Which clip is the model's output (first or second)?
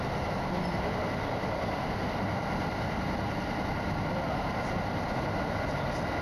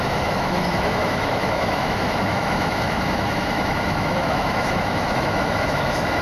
second